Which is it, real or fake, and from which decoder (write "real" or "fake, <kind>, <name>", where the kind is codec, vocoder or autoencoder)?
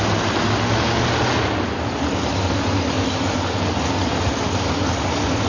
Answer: real